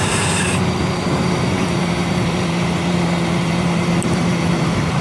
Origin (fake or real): fake